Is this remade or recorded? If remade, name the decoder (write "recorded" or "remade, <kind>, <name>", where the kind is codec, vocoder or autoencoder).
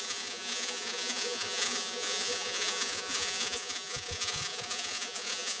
remade, vocoder, Vocos